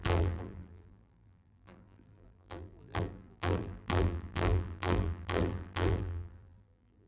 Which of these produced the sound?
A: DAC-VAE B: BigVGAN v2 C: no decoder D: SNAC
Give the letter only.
B